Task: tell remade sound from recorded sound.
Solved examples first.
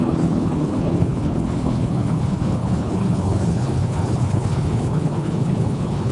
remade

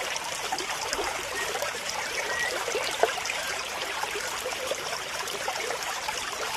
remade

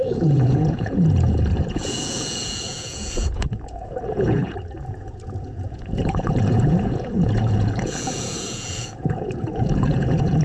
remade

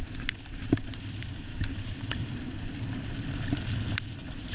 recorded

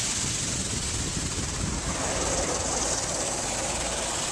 recorded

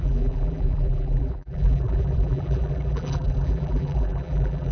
remade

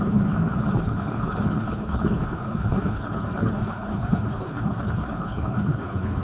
remade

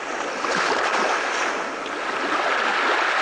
recorded